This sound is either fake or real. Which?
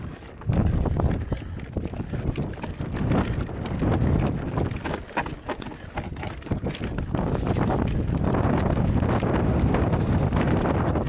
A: real